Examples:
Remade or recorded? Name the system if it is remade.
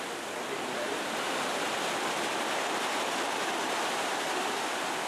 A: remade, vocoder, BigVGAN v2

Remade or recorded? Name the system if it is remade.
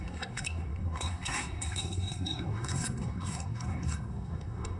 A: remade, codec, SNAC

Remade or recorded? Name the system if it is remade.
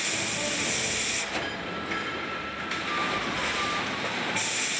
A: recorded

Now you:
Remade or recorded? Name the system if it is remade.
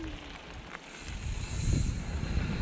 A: recorded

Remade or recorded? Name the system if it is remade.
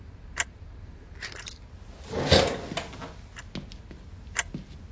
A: recorded